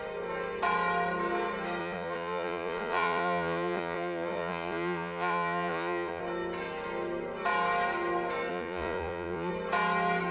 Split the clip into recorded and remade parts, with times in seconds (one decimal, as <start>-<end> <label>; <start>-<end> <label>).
0.0-1.8 recorded; 1.8-6.2 remade; 6.2-8.5 recorded; 8.5-9.5 remade; 9.5-10.3 recorded